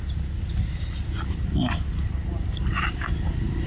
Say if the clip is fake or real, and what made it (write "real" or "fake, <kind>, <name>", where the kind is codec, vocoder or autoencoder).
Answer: real